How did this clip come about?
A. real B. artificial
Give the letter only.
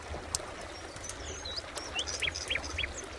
A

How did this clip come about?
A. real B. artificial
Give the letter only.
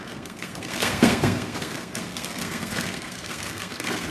B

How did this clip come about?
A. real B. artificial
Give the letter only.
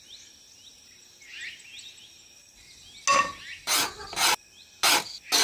A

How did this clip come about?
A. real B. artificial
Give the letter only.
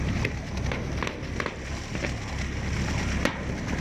A